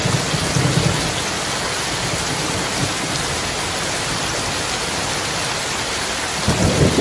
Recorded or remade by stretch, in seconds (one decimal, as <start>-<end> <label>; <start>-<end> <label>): 0.0-7.0 recorded